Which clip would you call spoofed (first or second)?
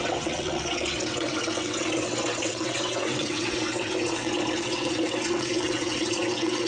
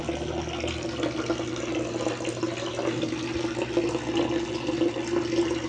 first